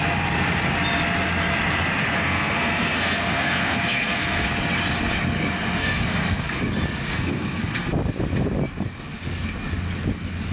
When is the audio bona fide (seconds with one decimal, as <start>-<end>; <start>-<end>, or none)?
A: 0.0-2.0; 4.5-5.8; 6.6-7.1; 7.9-10.5